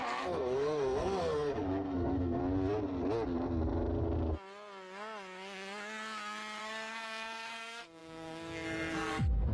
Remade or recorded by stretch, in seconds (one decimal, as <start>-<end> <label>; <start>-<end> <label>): 0.0-2.4 remade; 2.4-6.6 recorded; 6.6-9.5 remade